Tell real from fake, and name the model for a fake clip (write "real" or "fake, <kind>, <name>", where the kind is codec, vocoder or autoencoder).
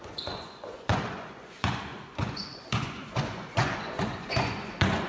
fake, vocoder, Vocos